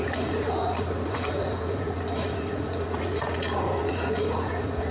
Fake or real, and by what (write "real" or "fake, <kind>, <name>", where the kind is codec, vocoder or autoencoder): fake, vocoder, Vocos